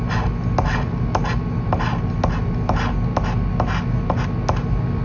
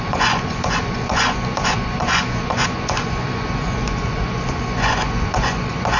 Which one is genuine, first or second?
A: first